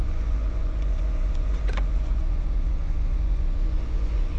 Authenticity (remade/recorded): remade